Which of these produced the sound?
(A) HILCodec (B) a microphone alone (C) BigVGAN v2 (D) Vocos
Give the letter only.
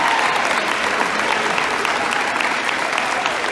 B